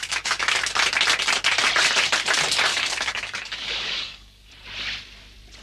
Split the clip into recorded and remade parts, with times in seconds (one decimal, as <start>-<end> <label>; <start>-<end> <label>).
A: 0.0-0.6 remade; 0.6-2.7 recorded; 2.7-4.5 remade; 4.5-5.6 recorded